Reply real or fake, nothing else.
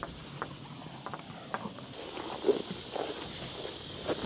real